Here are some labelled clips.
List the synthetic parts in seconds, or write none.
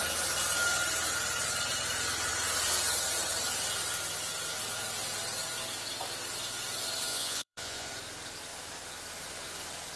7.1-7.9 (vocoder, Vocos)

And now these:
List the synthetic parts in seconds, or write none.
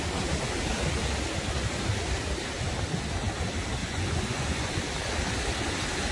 3.8-4.8 (vocoder, Vocos)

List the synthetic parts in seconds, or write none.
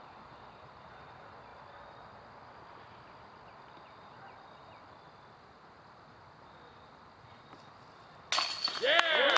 none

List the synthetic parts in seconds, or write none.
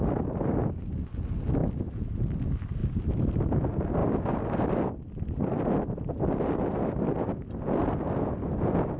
none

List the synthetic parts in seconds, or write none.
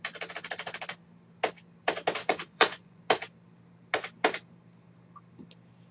2.2-3.0 (vocoder, Vocos)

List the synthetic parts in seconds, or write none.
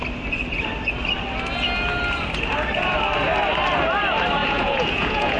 4.4-5.4 (vocoder, Vocos)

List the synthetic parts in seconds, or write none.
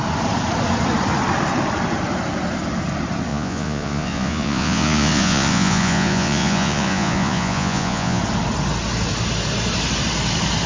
3.3-8.2 (vocoder, Vocos)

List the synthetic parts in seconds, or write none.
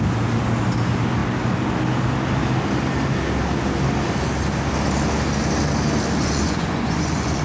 6.2-7.4 (vocoder, Vocos)